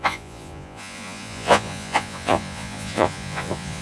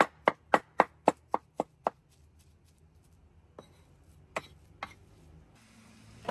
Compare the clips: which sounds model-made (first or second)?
first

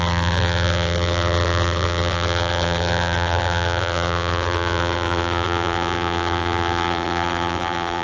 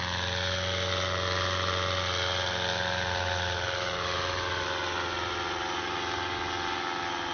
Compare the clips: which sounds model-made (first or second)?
first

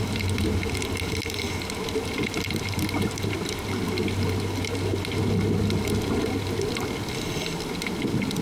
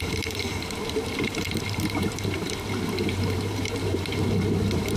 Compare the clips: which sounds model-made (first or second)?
second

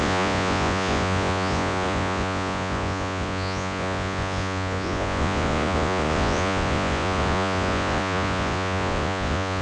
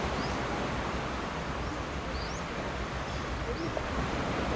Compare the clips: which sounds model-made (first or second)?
first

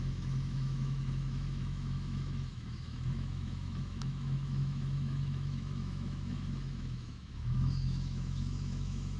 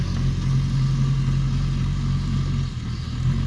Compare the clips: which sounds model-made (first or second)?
first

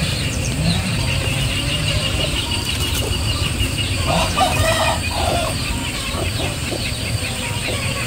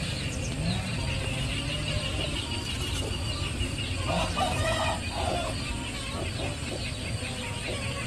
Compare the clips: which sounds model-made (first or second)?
first